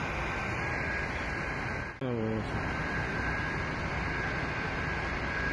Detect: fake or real real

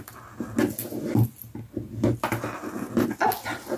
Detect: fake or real real